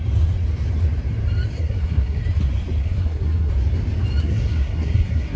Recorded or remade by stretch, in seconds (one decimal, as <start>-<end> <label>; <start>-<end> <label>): 0.0-1.6 recorded; 1.6-2.2 remade; 2.2-2.8 recorded; 2.8-3.5 remade; 3.5-4.2 recorded; 4.2-5.4 remade